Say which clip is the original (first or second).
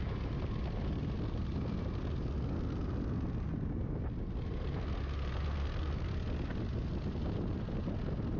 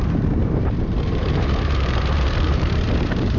first